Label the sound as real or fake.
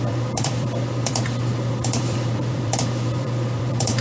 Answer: fake